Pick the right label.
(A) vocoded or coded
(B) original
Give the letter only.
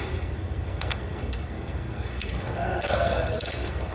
A